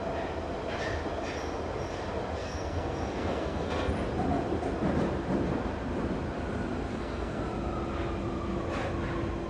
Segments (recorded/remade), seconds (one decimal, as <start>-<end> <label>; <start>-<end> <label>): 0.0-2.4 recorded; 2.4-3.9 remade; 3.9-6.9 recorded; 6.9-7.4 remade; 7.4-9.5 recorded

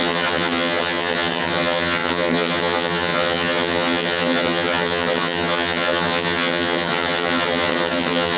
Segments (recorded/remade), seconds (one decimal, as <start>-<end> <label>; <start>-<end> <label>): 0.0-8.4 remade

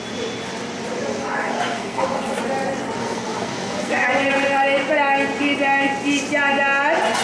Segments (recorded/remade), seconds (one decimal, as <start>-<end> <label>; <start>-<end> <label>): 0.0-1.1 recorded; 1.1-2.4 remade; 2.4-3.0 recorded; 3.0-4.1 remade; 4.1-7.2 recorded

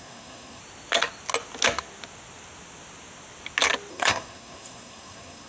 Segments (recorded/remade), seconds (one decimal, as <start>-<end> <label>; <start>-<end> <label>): 0.0-0.6 remade; 0.6-3.9 recorded; 3.9-5.5 remade

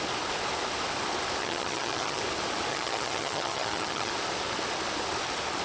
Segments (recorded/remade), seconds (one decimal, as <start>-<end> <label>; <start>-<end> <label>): 0.0-1.4 recorded; 1.4-2.2 remade; 2.2-2.7 recorded; 2.7-4.1 remade; 4.1-5.6 recorded

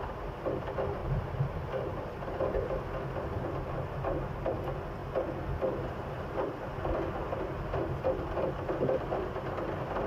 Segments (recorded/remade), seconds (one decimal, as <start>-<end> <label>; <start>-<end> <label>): 0.0-10.1 recorded

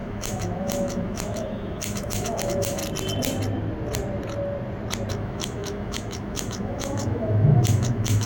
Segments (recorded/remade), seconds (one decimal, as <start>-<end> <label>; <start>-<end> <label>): 0.0-2.8 remade; 2.8-5.1 recorded; 5.1-8.3 remade